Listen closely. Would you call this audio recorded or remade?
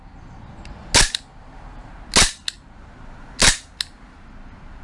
recorded